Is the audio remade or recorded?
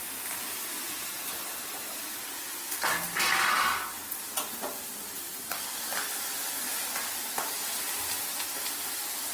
recorded